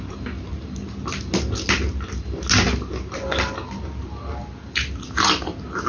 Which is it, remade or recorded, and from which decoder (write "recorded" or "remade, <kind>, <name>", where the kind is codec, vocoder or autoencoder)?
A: recorded